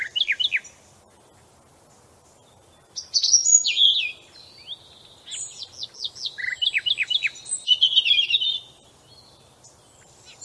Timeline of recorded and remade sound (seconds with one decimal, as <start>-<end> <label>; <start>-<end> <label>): 0.0-10.4 recorded